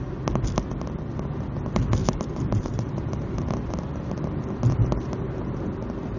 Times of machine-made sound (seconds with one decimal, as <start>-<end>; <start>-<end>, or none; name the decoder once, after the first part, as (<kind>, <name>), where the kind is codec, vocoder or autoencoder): 2.0-3.5 (vocoder, BigVGAN v2)

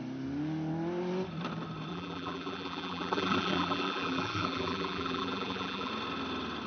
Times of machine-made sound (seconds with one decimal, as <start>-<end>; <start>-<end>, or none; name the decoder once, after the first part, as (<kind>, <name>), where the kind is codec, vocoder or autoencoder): 1.9-5.9 (vocoder, BigVGAN v2)

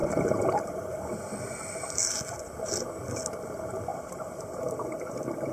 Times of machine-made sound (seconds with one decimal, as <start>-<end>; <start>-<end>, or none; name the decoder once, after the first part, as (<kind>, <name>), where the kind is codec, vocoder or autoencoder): 0.0-1.0 (vocoder, BigVGAN v2); 3.9-4.6

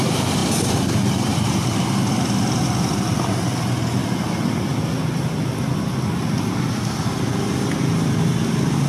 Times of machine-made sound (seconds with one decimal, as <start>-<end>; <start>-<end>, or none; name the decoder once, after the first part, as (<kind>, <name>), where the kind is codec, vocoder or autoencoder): none